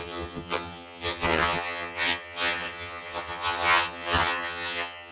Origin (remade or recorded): remade